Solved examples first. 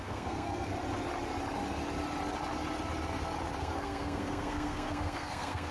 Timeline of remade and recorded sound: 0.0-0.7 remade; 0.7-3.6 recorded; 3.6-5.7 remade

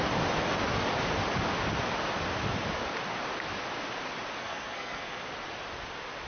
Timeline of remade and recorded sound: 0.0-4.4 recorded; 4.4-5.2 remade; 5.2-6.3 recorded

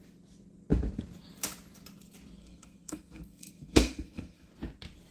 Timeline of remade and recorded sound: 0.0-2.4 recorded; 2.4-4.5 remade; 4.5-5.1 recorded

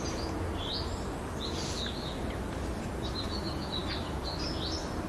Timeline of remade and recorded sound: 0.0-5.1 recorded